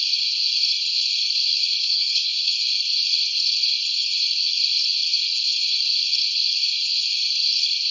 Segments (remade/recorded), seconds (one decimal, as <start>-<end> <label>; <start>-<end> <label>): 0.0-1.8 recorded; 1.8-2.5 remade; 2.5-7.9 recorded